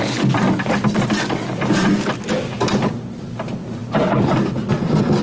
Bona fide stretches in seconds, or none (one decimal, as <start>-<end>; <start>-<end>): 0.0-5.2